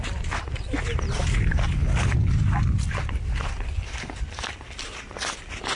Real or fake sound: real